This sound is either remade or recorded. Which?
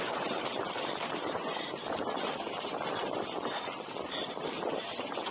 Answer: remade